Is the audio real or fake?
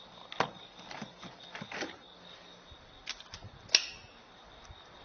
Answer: real